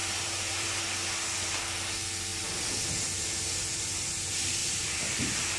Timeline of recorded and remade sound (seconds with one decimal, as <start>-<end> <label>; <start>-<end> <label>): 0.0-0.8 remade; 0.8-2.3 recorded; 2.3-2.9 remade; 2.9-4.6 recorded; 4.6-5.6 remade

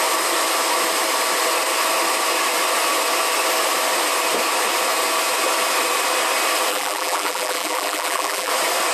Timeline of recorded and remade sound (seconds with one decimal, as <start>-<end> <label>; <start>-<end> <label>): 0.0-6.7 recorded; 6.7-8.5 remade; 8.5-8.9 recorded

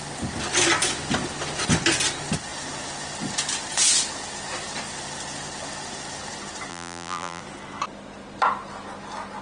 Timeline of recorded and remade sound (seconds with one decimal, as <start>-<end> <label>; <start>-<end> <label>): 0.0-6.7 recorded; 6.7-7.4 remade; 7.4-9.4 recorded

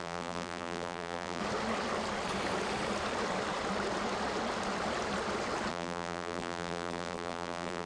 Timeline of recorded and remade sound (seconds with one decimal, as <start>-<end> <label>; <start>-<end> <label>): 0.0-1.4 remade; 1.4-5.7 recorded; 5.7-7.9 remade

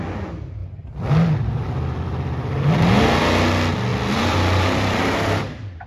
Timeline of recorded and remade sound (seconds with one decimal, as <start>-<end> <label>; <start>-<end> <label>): 0.0-0.6 recorded; 0.6-3.2 remade; 3.2-3.9 recorded; 3.9-5.9 remade

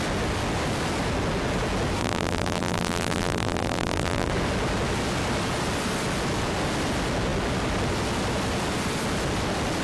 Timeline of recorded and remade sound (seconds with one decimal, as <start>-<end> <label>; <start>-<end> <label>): 0.0-2.0 recorded; 2.0-4.3 remade; 4.3-9.8 recorded

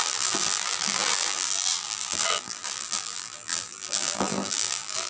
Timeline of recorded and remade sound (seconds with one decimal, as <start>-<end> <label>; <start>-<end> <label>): 0.0-5.1 remade